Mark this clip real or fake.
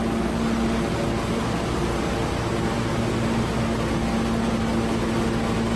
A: real